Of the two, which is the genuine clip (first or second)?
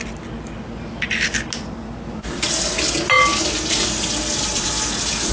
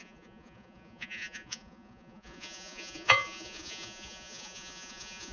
first